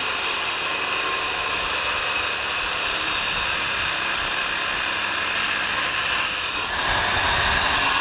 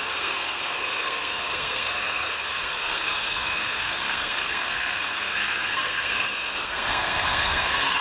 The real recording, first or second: first